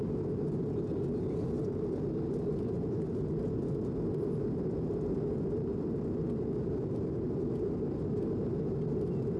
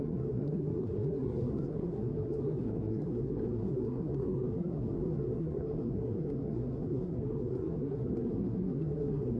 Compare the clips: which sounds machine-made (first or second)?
second